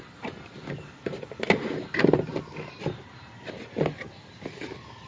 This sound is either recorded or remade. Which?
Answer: recorded